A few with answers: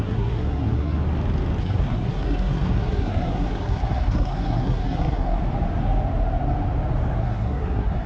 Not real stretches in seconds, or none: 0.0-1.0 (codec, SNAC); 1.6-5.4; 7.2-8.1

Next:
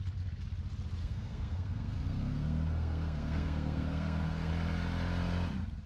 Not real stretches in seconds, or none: 1.0-4.5 (codec, SNAC)

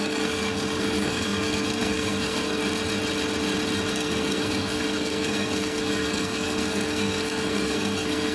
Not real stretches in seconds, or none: 0.0-2.6 (codec, SNAC); 3.9-8.3